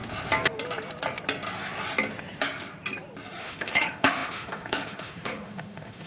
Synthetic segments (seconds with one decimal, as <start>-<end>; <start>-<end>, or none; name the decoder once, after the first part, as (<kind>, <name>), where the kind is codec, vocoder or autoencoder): 3.4-6.1 (autoencoder, DAC-VAE)